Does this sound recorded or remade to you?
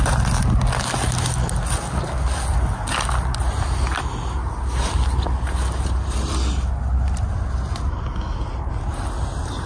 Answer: recorded